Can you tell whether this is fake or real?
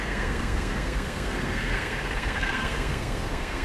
fake